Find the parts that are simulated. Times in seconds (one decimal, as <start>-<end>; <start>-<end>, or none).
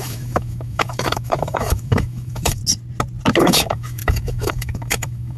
0.0-2.6; 3.4-5.4